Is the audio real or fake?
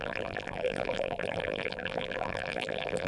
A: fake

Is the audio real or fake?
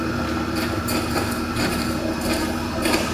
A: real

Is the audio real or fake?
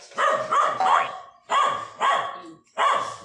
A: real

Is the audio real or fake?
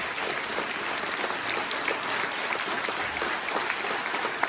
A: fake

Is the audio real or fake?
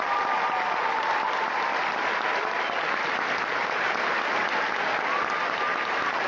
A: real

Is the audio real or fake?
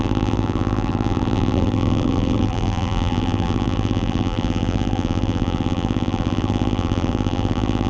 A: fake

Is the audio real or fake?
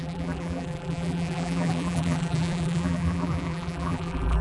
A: fake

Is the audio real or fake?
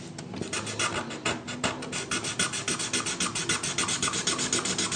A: real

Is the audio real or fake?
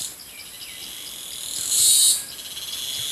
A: real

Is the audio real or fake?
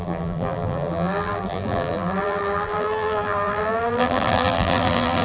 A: fake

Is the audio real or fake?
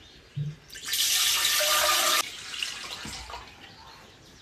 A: real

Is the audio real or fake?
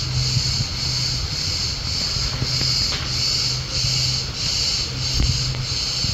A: real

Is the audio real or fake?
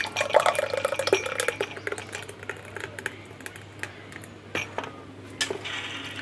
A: real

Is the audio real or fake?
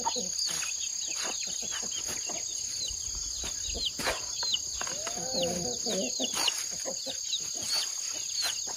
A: real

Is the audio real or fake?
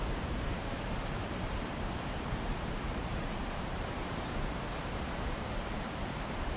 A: fake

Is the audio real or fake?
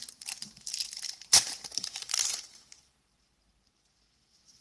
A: fake